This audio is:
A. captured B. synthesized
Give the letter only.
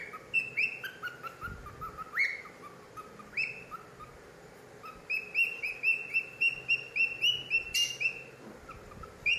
A